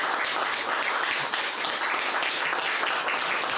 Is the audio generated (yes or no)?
no